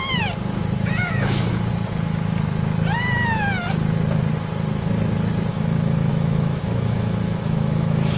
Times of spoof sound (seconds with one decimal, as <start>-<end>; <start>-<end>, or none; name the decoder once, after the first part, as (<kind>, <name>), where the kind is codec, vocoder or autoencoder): 1.0-1.5 (autoencoder, DAC-VAE); 5.5-8.2